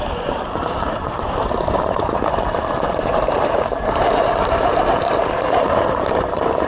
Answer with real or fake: fake